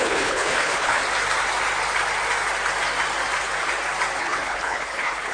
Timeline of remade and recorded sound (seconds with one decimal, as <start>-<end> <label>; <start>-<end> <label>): 0.0-1.0 remade; 1.0-4.2 recorded; 4.2-5.3 remade